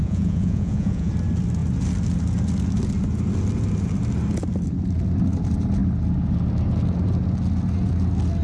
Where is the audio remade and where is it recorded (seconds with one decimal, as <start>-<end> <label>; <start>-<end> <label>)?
0.0-1.1 remade; 1.1-8.4 recorded